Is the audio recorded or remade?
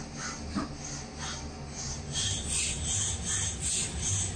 recorded